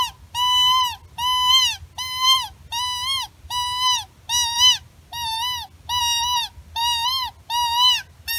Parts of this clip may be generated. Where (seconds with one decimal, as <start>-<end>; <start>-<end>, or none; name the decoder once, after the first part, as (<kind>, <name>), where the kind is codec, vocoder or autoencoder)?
none

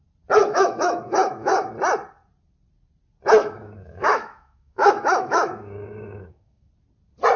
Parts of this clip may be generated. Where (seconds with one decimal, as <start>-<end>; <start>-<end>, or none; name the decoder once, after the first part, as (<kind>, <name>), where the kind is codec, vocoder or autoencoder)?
0.4-1.7 (autoencoder, DAC-VAE); 3.4-6.7